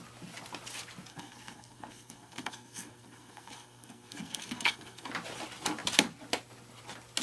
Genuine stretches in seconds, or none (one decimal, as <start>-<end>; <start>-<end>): 0.0-1.1; 5.1-7.2